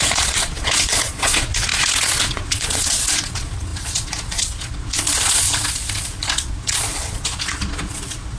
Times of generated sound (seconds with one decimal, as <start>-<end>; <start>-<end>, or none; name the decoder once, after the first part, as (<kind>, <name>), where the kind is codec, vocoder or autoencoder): 0.0-8.4 (vocoder, Vocos)